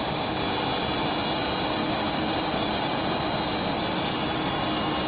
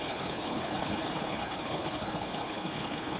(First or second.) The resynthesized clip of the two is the second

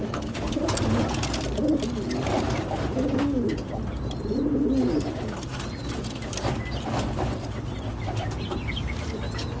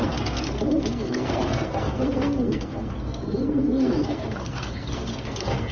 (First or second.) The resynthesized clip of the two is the second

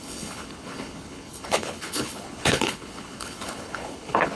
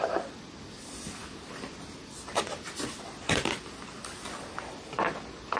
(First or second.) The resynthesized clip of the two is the first